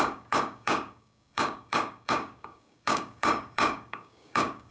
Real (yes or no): no